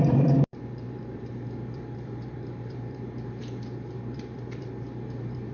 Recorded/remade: remade